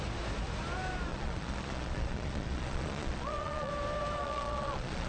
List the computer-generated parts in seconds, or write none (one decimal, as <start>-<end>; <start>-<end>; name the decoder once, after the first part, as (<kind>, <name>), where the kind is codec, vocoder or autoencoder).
1.1-3.7 (vocoder, Vocos); 4.2-5.1